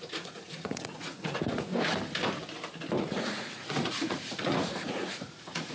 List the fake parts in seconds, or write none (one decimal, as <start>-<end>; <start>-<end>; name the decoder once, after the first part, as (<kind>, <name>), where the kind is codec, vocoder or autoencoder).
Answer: 0.0-1.7 (vocoder, Vocos); 3.0-5.7